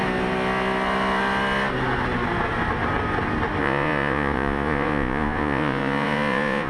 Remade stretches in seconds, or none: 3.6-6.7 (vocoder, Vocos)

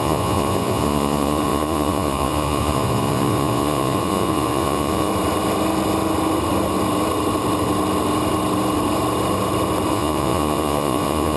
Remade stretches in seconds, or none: 0.0-5.1 (vocoder, Vocos); 9.9-11.4

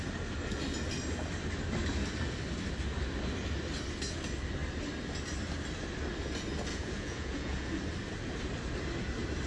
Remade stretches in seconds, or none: 6.7-7.8 (vocoder, Vocos)